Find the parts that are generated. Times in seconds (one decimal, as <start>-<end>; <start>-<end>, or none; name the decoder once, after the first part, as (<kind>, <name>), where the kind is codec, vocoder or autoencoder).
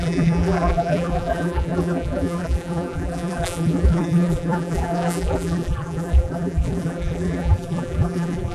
0.0-8.5 (vocoder, BigVGAN v2)